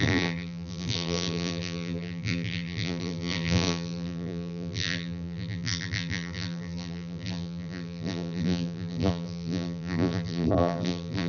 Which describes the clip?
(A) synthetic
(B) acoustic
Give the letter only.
A